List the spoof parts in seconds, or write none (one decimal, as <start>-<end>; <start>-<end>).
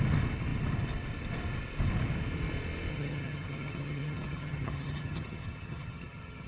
2.9-6.5